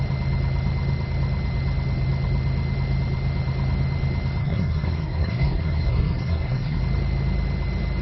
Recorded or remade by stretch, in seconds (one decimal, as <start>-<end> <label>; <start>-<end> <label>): 0.0-4.4 recorded; 4.4-6.8 remade; 6.8-8.0 recorded